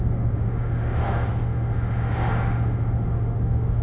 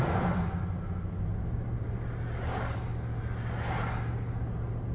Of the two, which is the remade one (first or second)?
first